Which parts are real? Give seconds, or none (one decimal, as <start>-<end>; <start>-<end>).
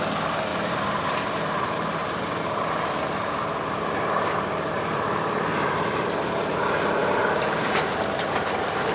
none